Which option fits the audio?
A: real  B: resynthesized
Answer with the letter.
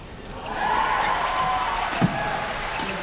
A